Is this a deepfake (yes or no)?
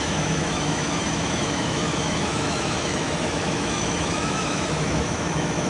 yes